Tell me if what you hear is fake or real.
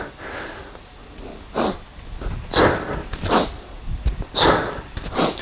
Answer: real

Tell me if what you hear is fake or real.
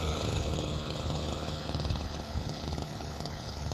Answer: fake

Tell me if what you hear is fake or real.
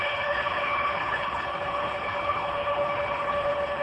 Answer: fake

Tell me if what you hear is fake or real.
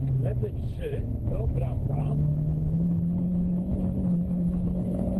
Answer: fake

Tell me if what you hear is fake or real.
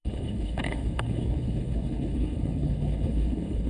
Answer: fake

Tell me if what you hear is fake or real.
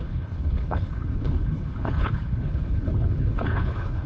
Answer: fake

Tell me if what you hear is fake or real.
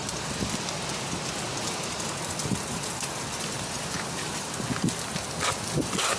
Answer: real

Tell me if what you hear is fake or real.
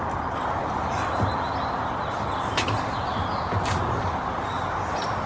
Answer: real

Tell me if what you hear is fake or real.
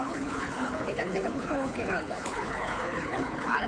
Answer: fake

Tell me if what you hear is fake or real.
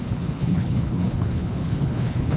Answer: fake